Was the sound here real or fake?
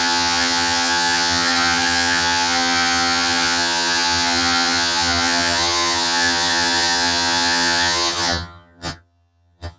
fake